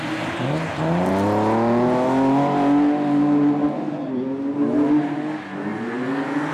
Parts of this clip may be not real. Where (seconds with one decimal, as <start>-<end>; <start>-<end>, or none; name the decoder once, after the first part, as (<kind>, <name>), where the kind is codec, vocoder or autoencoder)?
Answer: none